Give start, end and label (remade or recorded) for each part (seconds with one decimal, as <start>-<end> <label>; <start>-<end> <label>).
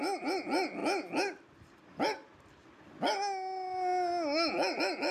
0.0-5.1 recorded